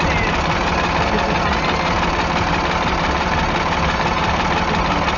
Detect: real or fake real